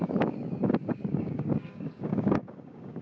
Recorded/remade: remade